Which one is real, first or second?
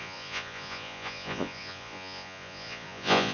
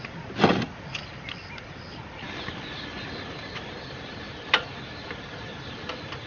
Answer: second